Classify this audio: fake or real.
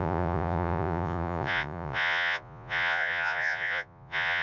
fake